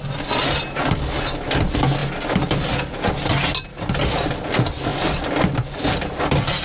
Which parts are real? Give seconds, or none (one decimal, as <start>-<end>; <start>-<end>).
0.0-6.6